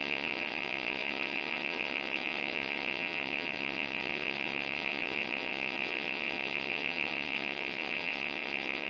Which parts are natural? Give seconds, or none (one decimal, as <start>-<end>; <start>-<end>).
none